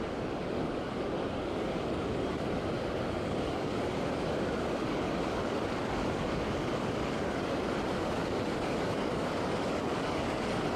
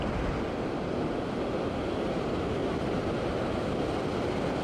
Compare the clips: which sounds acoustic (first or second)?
second